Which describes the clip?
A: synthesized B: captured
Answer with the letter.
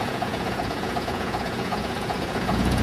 A